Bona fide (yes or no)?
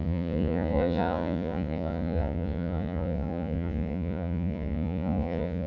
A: no